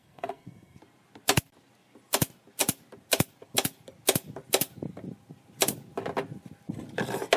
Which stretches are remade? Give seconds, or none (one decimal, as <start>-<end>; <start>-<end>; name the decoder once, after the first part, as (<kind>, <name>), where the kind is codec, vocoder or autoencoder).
0.0-0.8 (codec, SNAC)